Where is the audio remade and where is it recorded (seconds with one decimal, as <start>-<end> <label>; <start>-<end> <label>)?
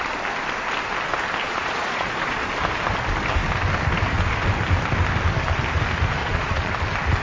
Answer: 0.0-1.4 recorded; 1.4-2.4 remade; 2.4-6.2 recorded; 6.2-6.7 remade; 6.7-7.2 recorded